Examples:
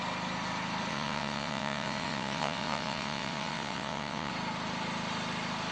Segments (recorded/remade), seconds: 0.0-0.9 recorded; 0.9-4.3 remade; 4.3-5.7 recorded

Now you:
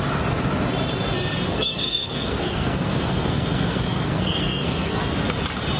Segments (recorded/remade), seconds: 0.0-1.5 recorded; 1.5-5.0 remade; 5.0-5.8 recorded

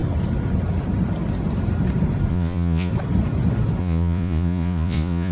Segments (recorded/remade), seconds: 0.0-2.3 recorded; 2.3-2.9 remade; 2.9-3.8 recorded; 3.8-5.3 remade

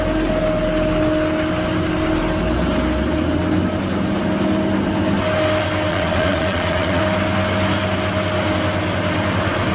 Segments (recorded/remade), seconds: 0.0-5.9 recorded; 5.9-7.0 remade; 7.0-9.7 recorded